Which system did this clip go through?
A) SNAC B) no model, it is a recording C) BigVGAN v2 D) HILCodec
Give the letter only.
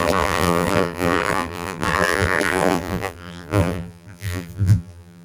C